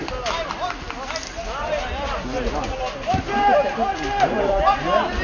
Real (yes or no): yes